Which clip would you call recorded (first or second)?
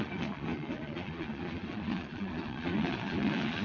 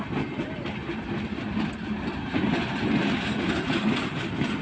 second